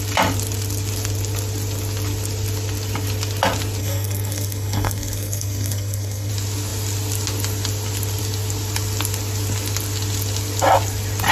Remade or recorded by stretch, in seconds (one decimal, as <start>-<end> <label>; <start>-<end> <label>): 0.0-3.8 recorded; 3.8-6.3 remade; 6.3-11.3 recorded